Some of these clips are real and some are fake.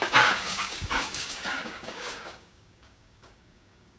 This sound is fake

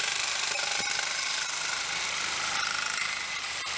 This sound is fake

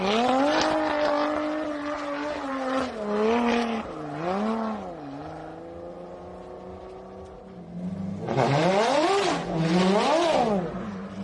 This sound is real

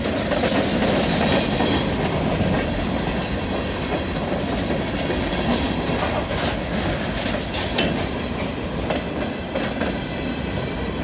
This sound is real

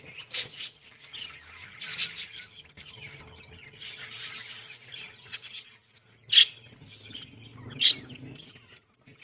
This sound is real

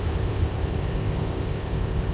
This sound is fake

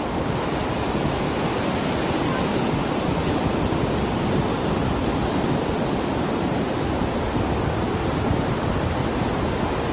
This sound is real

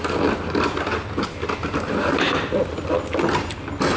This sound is real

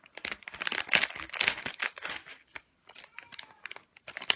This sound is real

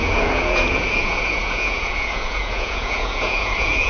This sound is fake